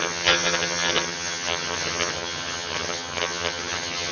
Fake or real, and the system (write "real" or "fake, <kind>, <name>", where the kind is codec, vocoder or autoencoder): fake, vocoder, HiFi-GAN